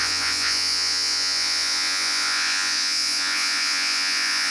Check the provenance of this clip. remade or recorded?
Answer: remade